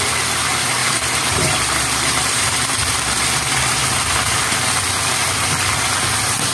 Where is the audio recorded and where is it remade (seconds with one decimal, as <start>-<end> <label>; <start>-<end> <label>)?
0.0-0.8 recorded; 0.8-4.7 remade; 4.7-6.5 recorded